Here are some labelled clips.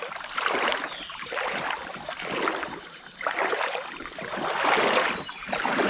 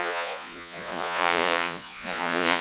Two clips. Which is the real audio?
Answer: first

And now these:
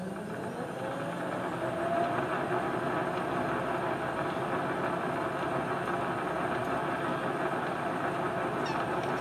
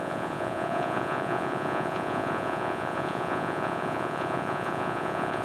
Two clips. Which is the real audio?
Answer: first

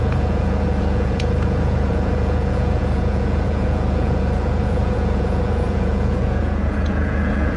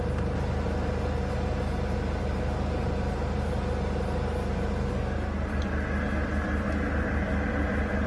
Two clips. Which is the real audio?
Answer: second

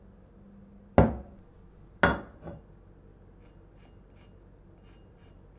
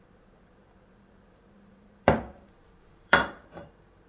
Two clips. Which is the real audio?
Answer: first